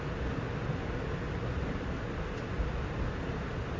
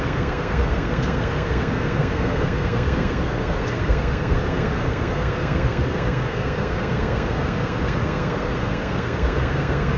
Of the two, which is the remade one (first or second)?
second